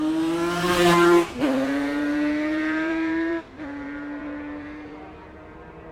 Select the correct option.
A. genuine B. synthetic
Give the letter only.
B